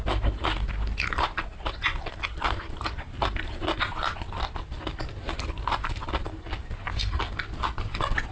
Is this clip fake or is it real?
real